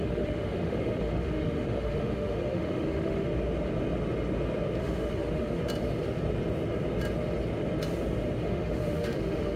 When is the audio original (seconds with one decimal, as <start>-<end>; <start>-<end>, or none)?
3.3-4.8; 5.6-8.4

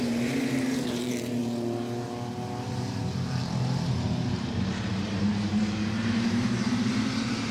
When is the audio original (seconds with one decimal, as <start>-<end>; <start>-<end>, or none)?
1.4-3.4